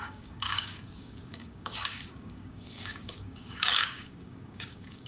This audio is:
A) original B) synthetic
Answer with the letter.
B